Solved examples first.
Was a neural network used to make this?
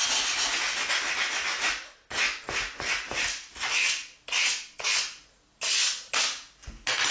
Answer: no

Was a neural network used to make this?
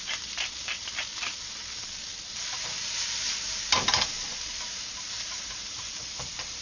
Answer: yes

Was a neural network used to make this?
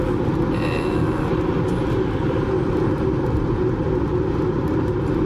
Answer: no